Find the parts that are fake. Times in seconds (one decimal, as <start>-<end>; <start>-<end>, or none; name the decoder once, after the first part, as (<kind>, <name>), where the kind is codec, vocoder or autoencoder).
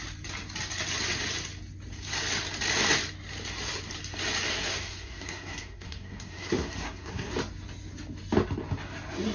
4.5-7.3 (codec, SNAC)